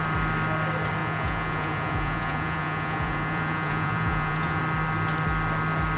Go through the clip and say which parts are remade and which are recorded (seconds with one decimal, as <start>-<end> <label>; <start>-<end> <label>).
0.0-1.0 recorded; 1.0-4.6 remade; 4.6-6.0 recorded